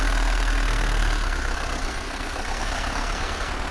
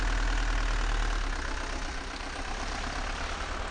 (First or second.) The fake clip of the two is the first